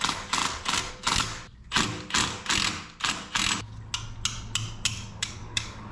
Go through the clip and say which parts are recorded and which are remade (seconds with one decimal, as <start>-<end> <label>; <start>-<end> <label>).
0.0-0.4 remade; 0.4-0.9 recorded; 0.9-1.4 remade; 1.4-4.9 recorded; 4.9-5.9 remade